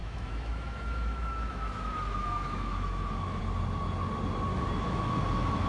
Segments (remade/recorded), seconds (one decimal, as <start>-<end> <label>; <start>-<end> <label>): 0.0-3.4 remade; 3.4-4.5 recorded; 4.5-5.7 remade